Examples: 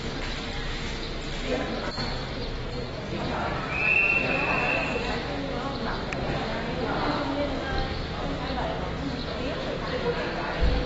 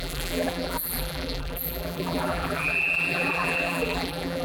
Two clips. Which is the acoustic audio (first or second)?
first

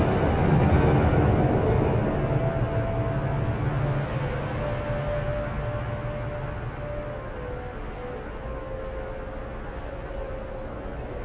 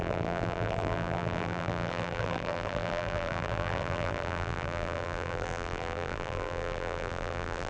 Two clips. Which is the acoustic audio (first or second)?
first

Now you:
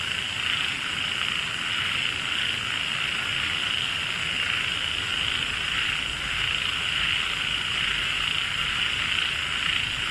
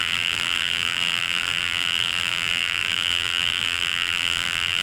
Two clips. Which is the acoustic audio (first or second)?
first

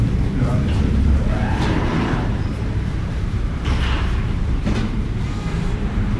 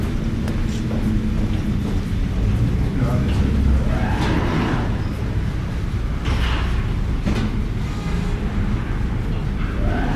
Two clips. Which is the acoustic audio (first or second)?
second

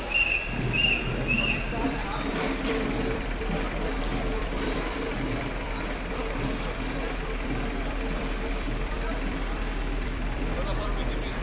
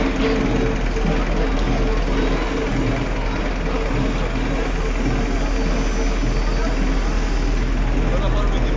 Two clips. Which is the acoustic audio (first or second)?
second